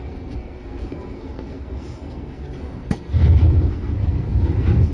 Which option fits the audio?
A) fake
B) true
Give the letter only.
A